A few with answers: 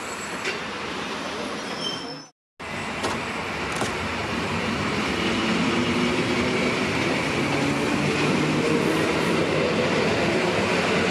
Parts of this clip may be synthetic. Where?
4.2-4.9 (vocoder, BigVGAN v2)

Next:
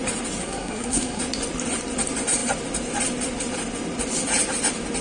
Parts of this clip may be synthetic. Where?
0.4-1.2 (codec, SNAC)

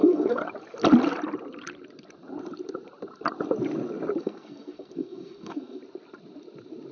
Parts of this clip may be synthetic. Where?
0.0-0.4 (codec, SNAC); 4.2-5.8